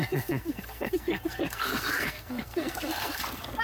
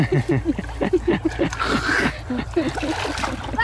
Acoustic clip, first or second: second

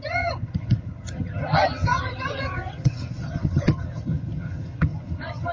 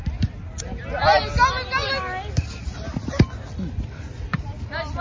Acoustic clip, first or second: second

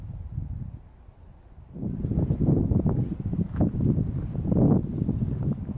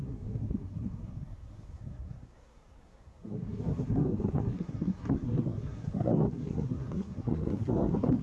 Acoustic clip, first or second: first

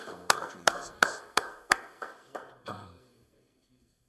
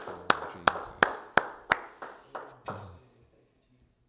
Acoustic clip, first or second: second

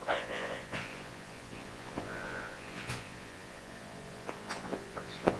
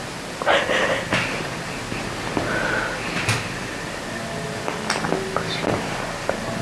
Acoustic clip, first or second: second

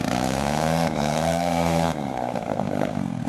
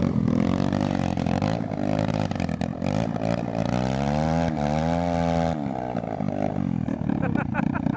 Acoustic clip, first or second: second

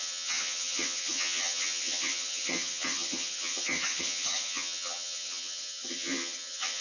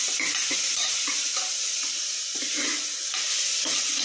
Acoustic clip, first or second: second